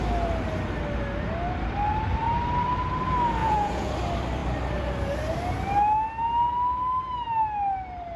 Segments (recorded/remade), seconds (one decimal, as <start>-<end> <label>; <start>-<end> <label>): 0.0-3.4 recorded; 3.4-3.9 remade; 3.9-8.2 recorded